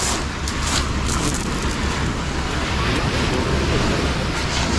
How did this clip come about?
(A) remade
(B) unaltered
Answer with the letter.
B